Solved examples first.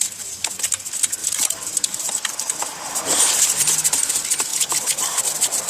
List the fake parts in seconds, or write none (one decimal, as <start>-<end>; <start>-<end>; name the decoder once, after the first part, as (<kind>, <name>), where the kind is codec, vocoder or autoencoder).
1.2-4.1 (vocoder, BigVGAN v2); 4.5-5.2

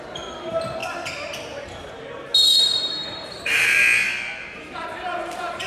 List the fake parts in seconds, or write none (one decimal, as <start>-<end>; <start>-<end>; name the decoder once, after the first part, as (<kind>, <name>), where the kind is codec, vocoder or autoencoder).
0.0-0.8 (vocoder, BigVGAN v2); 2.8-3.8; 4.4-5.7

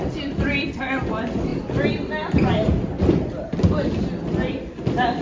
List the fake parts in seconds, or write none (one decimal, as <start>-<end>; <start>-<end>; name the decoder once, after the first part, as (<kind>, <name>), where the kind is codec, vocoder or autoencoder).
0.0-1.5 (vocoder, BigVGAN v2); 4.6-5.2

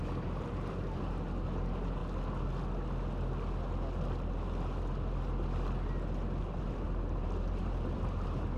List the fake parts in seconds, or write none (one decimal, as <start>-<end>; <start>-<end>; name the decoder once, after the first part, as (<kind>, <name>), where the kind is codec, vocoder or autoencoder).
0.0-2.0 (vocoder, BigVGAN v2); 6.4-8.6

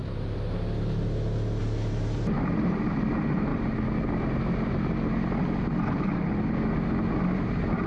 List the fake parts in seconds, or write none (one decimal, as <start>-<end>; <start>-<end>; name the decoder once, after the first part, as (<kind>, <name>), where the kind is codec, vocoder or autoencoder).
1.6-3.5 (vocoder, BigVGAN v2); 7.1-7.9